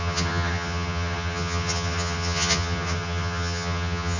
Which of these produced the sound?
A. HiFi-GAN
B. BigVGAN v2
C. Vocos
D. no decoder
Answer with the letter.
A